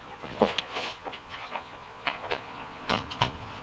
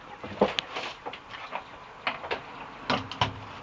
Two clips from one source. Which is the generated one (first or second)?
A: first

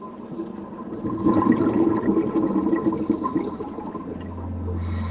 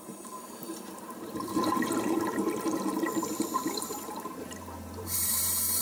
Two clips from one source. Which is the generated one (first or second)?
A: second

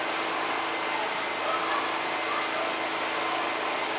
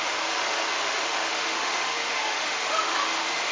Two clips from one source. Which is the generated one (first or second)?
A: second